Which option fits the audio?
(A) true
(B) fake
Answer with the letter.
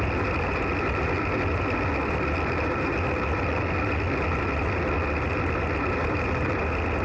A